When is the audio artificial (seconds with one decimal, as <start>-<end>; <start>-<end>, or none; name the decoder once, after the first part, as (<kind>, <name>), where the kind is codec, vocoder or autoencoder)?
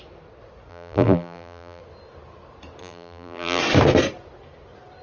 0.7-1.8 (vocoder, BigVGAN v2); 2.8-3.6